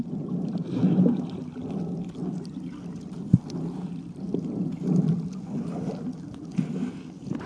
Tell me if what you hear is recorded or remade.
recorded